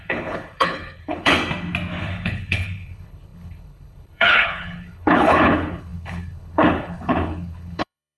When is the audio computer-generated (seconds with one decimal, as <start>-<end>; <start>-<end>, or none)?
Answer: 0.0-1.4; 2.0-8.2